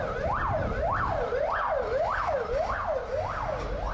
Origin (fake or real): real